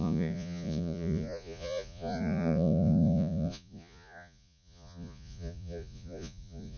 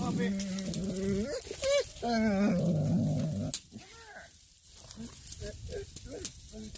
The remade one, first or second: first